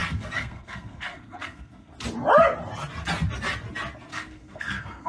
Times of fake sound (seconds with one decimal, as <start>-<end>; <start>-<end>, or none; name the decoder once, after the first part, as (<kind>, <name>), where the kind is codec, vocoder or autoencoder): 0.0-1.9 (codec, SNAC); 4.1-5.1